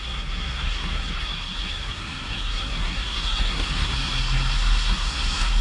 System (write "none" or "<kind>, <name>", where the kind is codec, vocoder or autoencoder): codec, SNAC